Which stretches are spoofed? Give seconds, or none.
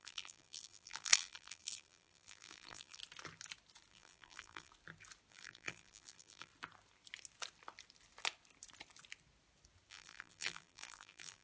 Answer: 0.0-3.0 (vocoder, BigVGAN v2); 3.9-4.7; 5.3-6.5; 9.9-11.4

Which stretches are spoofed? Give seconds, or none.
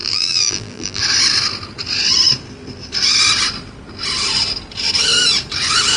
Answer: 0.0-1.0 (vocoder, BigVGAN v2)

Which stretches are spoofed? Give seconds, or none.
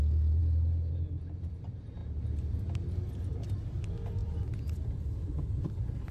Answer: 4.2-6.1 (vocoder, BigVGAN v2)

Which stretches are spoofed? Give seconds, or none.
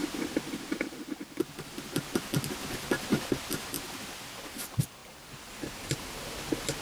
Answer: 5.0-6.0 (vocoder, BigVGAN v2)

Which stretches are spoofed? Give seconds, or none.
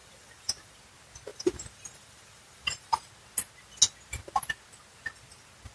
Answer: 0.0-0.8 (vocoder, BigVGAN v2); 1.3-3.1